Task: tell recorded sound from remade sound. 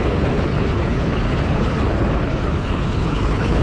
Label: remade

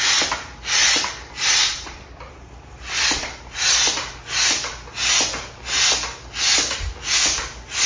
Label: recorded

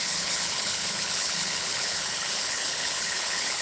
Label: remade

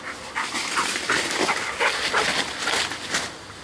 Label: recorded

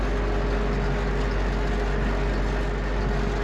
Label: recorded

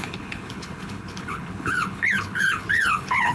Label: remade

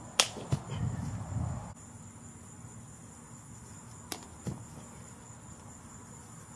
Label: recorded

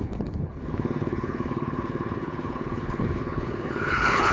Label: remade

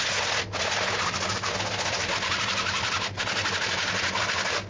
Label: recorded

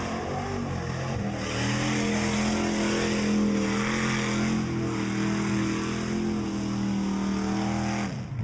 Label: recorded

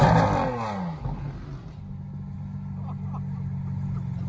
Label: recorded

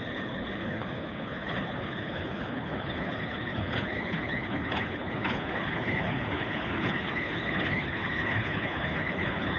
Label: remade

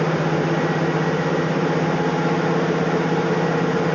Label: recorded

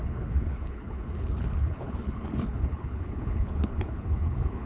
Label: remade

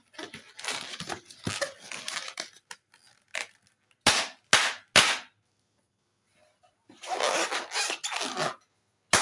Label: recorded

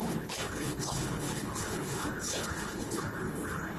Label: remade